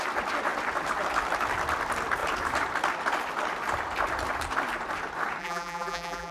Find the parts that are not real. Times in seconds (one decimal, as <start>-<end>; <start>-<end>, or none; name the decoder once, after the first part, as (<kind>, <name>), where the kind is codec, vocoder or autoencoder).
5.4-6.3 (vocoder, BigVGAN v2)